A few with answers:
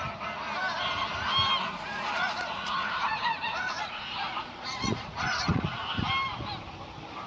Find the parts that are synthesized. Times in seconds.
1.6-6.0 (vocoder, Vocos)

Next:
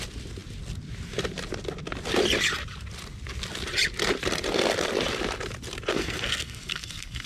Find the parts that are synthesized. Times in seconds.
5.9-7.3 (codec, SNAC)

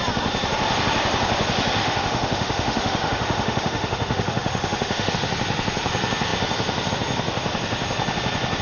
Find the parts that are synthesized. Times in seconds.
1.8-5.1 (autoencoder, DAC-VAE)

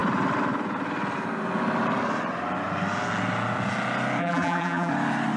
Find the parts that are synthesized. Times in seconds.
4.2-4.9 (vocoder, BigVGAN v2)